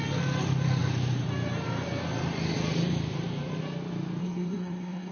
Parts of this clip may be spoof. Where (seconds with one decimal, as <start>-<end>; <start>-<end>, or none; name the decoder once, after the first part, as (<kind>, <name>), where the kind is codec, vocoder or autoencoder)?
4.2-5.1 (codec, SNAC)